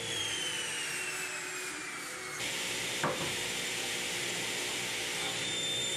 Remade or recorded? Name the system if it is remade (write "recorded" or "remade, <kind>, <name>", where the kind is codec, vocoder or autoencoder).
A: remade, vocoder, BigVGAN v2